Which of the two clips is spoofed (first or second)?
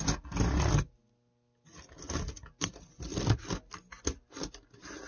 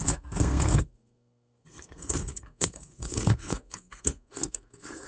second